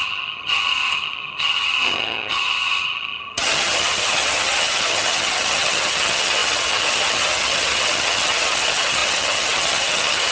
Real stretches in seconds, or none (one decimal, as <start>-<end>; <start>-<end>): none